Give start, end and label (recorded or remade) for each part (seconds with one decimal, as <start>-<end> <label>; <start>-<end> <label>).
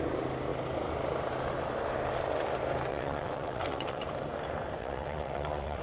0.0-2.9 recorded; 2.9-4.0 remade; 4.0-4.8 recorded; 4.8-5.8 remade